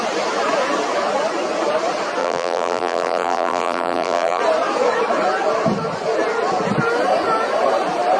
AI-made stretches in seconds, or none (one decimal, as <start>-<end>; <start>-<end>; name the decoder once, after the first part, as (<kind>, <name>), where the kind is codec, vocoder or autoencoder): 2.2-4.4 (vocoder, BigVGAN v2)